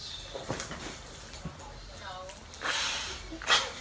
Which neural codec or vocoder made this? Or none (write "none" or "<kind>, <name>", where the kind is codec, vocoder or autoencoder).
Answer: none